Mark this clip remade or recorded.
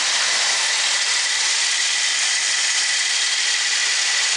recorded